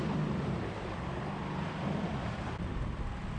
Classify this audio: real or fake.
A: fake